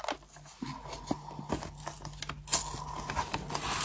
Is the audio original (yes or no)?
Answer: yes